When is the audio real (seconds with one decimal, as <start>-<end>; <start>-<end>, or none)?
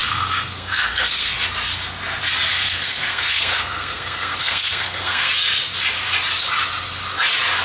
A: 1.3-2.5; 5.3-7.6